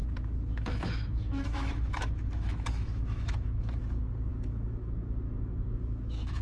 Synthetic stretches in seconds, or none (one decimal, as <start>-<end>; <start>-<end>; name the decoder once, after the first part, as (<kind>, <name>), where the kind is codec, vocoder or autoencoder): 0.0-3.8 (autoencoder, DAC-VAE); 4.3-6.4